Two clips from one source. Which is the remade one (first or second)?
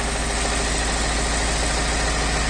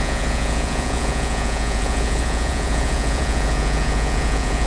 second